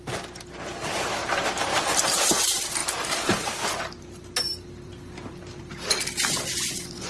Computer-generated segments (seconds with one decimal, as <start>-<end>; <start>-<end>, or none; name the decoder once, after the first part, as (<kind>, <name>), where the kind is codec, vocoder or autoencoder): 0.0-1.2 (vocoder, BigVGAN v2); 1.8-2.8; 4.0-7.1